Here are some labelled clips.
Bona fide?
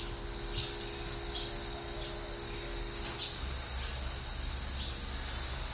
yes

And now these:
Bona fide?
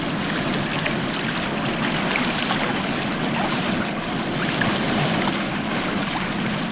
yes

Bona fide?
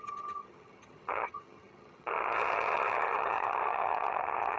no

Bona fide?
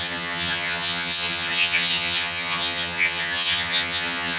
no